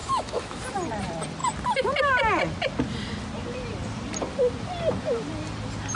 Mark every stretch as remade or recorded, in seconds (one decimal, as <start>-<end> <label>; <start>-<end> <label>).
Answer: 0.0-0.6 remade; 0.6-6.0 recorded